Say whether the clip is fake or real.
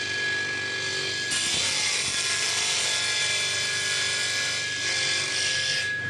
real